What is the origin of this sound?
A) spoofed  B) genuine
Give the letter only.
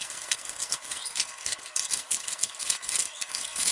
A